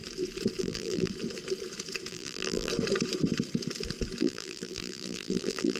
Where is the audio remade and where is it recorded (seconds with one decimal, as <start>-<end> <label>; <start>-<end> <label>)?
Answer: 0.0-0.6 recorded; 0.6-1.1 remade; 1.1-2.1 recorded; 2.1-2.7 remade; 2.7-4.2 recorded; 4.2-5.8 remade